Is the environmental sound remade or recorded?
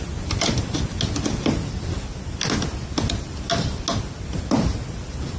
recorded